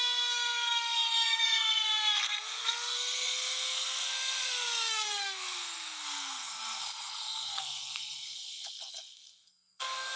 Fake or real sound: fake